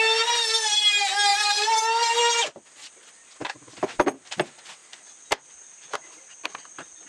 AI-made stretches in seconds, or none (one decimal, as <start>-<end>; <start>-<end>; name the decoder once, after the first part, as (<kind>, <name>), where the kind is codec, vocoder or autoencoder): none